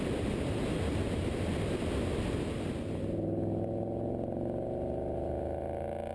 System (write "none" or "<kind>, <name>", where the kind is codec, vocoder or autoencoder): none